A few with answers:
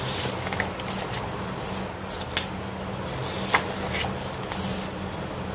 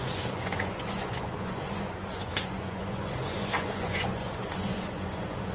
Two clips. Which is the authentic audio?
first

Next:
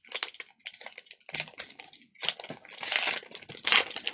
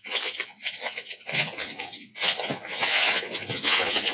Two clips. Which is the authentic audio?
first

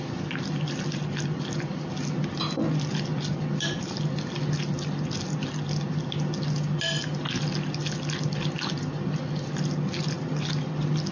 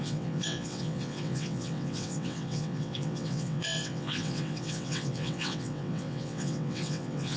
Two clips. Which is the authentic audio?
first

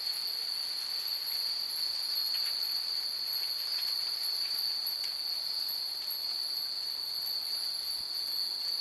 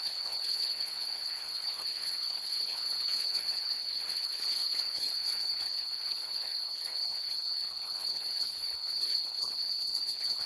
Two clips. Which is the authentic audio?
first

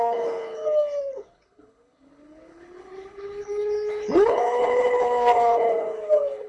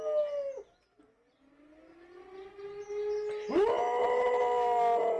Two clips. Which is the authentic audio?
second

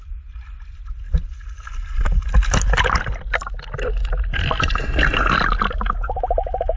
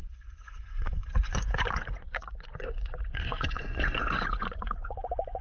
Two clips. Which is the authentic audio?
first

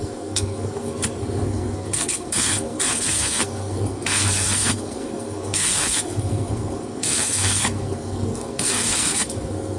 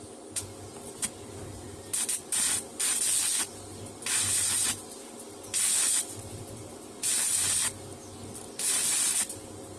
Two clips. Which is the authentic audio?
second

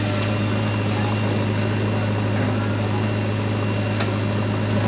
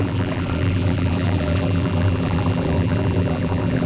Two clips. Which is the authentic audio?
first